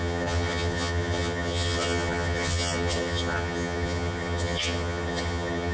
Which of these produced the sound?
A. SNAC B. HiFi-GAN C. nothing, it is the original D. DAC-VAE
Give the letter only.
B